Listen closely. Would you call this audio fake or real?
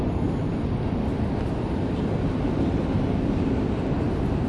real